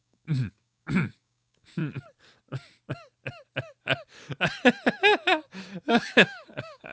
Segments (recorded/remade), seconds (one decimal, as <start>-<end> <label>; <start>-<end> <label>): 0.0-1.8 remade; 1.8-5.9 recorded; 5.9-6.9 remade